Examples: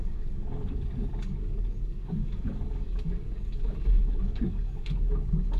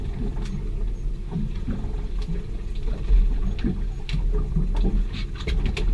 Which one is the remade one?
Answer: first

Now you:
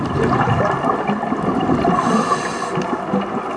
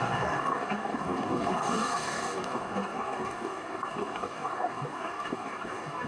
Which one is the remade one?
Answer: second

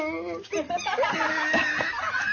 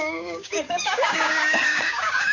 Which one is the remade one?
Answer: second